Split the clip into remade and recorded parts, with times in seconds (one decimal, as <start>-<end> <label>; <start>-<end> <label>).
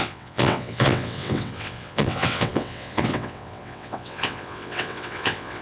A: 0.0-5.6 remade